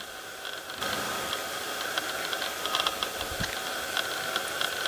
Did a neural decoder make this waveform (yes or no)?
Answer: no